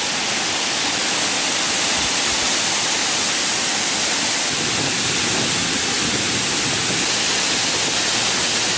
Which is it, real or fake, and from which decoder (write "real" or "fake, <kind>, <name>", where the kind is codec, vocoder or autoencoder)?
real